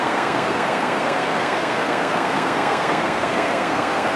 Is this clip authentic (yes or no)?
no